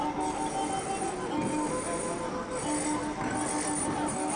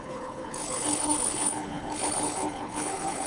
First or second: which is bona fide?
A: first